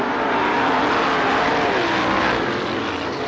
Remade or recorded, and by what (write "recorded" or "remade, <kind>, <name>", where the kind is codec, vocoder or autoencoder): recorded